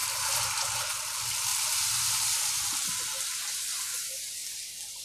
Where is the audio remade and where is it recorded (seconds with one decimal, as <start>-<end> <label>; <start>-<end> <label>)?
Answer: 0.0-0.8 remade; 0.8-1.5 recorded; 1.5-2.5 remade; 2.5-5.0 recorded